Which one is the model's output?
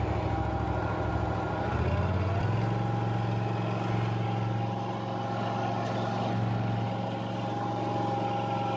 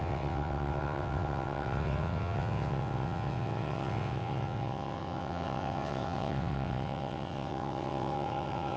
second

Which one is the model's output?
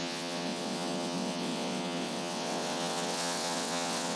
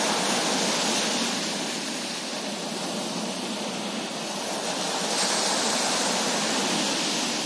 first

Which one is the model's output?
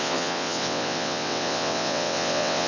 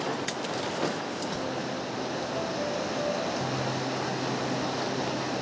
first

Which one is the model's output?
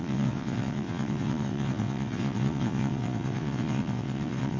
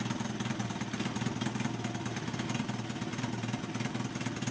first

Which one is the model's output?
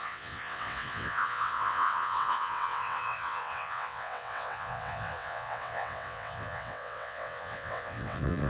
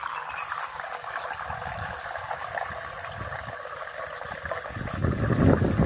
first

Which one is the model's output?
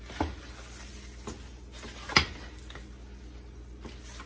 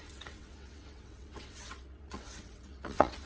second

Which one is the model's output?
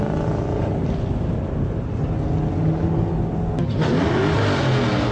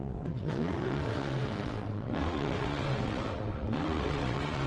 second